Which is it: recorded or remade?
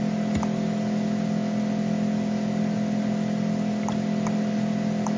recorded